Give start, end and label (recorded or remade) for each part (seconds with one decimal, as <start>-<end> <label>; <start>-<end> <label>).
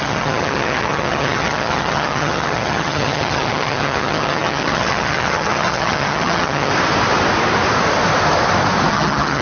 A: 0.0-6.7 remade; 6.7-8.9 recorded; 8.9-9.4 remade